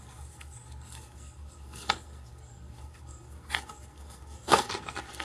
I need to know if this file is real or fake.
fake